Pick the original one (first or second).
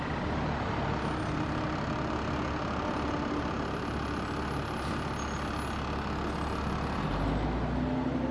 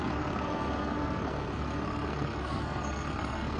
first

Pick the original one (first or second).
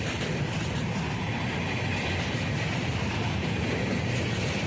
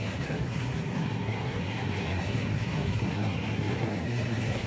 first